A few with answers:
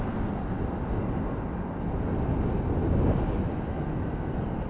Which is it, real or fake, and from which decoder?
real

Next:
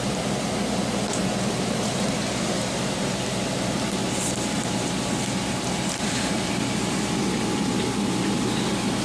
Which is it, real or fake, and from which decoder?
real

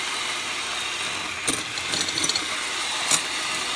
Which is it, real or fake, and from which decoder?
real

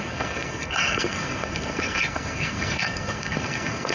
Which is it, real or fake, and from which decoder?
fake, codec, SNAC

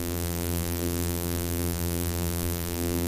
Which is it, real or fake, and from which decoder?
fake, vocoder, BigVGAN v2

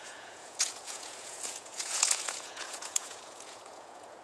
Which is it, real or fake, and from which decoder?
fake, vocoder, Vocos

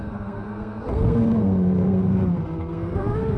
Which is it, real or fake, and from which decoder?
fake, codec, SNAC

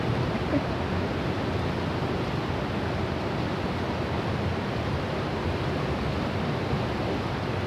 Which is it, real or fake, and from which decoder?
real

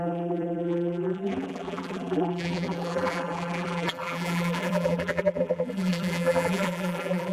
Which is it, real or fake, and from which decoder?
fake, vocoder, BigVGAN v2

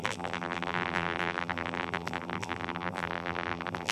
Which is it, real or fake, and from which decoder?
fake, vocoder, BigVGAN v2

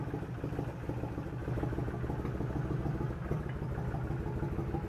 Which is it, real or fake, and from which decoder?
real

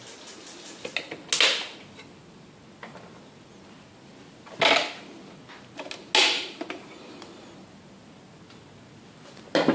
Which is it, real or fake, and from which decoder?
real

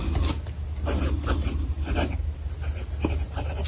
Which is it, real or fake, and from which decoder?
real